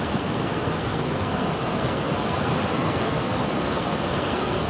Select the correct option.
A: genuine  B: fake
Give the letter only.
B